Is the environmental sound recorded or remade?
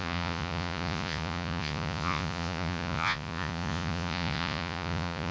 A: remade